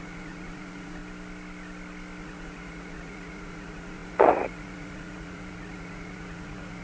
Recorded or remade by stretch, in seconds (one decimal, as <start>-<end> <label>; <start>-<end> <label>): 0.0-1.0 remade; 1.0-2.2 recorded; 2.2-6.8 remade